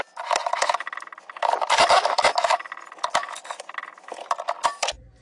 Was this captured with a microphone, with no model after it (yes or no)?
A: yes